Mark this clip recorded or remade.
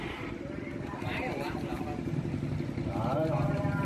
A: recorded